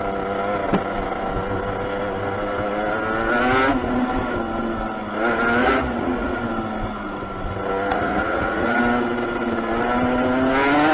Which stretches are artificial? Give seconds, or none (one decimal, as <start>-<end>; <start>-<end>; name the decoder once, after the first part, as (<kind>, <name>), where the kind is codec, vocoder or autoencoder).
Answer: 5.6-6.4 (vocoder, Vocos); 7.9-8.8